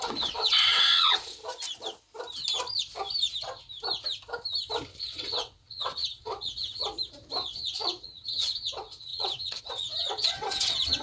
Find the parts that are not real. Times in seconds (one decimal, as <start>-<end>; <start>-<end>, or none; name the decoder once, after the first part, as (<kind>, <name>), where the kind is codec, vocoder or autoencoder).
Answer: 0.0-1.4 (vocoder, WaveNeXt); 5.0-6.8; 7.5-11.0